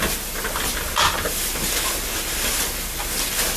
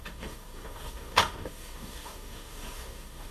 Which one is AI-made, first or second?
second